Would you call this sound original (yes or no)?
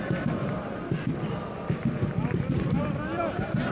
no